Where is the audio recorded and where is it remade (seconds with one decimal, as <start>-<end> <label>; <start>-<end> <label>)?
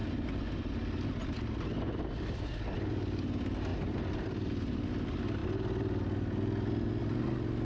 0.0-3.7 recorded; 3.7-4.9 remade; 4.9-7.6 recorded